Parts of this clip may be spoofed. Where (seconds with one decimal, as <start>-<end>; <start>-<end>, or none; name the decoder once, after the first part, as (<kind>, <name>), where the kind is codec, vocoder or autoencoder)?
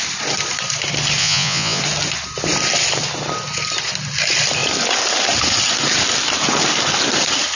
1.2-1.8 (vocoder, Vocos)